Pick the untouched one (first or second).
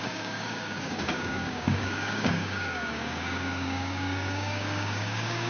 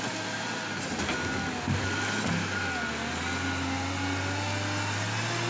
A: second